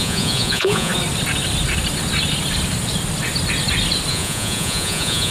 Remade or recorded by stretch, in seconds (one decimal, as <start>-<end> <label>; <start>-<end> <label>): 0.0-0.9 remade; 0.9-4.1 recorded; 4.1-5.3 remade